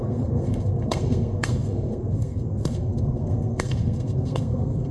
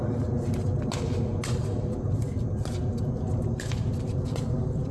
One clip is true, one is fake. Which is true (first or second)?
second